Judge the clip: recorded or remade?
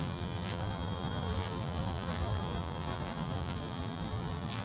remade